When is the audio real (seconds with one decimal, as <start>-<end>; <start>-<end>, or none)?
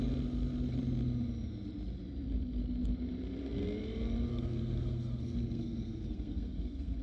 0.0-4.3